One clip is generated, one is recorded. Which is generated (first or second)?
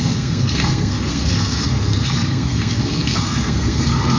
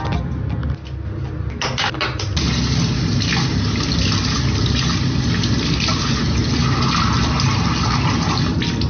first